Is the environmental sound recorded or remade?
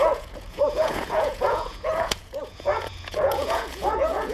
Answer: remade